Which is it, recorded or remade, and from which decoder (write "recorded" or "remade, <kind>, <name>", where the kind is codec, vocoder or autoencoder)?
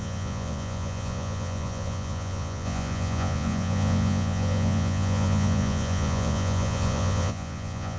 remade, vocoder, Vocos